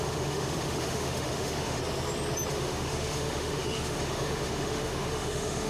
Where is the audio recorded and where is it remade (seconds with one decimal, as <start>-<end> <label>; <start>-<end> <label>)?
0.0-1.8 remade; 1.8-2.5 recorded; 2.5-5.7 remade